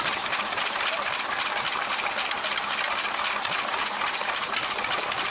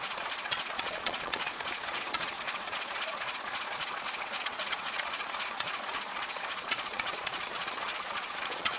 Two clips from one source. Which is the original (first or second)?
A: first